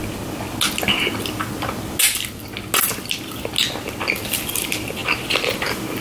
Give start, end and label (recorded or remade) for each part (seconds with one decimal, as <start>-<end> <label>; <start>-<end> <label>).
0.0-6.0 recorded